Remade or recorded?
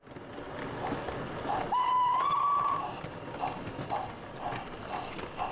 recorded